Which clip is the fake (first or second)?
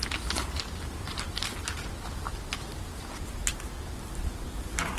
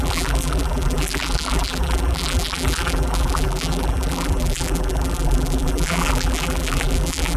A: second